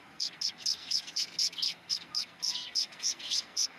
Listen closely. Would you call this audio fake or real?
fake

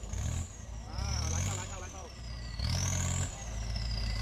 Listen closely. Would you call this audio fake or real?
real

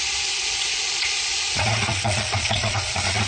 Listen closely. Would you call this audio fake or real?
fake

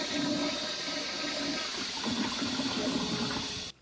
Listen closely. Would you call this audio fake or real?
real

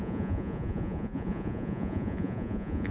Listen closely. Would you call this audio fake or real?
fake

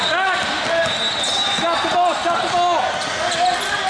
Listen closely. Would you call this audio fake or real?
real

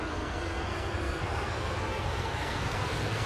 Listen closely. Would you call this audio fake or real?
fake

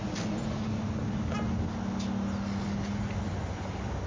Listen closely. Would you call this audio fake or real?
real